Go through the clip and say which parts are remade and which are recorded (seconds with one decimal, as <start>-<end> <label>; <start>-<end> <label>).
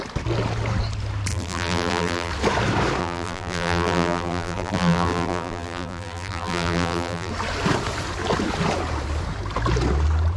0.0-1.3 recorded; 1.3-2.3 remade; 2.3-3.0 recorded; 3.0-7.3 remade; 7.3-10.4 recorded